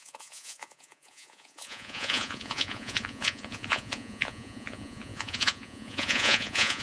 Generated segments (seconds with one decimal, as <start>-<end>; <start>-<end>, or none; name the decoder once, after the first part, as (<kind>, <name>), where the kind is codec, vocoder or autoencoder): 0.0-6.8 (vocoder, Vocos)